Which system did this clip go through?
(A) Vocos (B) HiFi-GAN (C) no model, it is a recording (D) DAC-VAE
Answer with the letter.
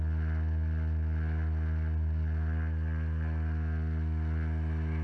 C